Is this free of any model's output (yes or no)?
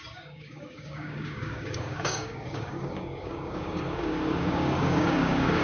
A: no